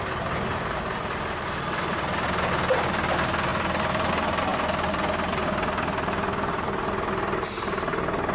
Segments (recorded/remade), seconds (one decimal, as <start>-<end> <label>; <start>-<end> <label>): 0.0-8.3 recorded